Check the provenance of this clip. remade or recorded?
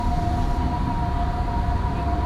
recorded